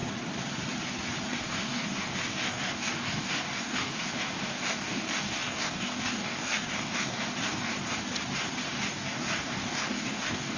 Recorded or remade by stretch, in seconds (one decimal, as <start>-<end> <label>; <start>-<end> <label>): 0.0-1.3 recorded; 1.3-7.7 remade; 7.7-8.7 recorded; 8.7-10.6 remade